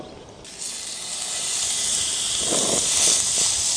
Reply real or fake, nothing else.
real